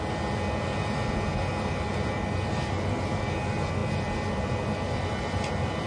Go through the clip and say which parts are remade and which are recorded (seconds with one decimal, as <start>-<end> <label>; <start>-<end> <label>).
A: 0.0-5.9 recorded